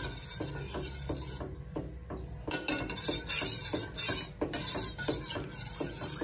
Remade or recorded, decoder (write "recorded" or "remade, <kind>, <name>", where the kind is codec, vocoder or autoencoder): recorded